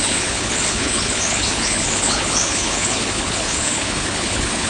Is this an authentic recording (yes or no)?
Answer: no